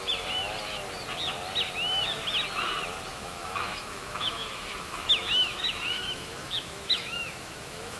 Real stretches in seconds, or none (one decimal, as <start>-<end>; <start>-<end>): 0.0-3.1

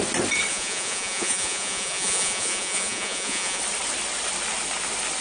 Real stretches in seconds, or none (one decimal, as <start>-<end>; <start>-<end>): 0.0-0.5; 3.6-5.2

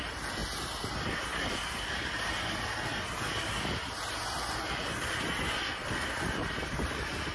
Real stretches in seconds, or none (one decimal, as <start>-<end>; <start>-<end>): 0.0-7.3